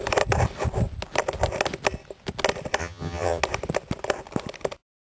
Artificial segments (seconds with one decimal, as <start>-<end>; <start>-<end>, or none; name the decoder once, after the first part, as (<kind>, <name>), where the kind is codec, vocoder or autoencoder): 2.8-3.4 (vocoder, HiFi-GAN)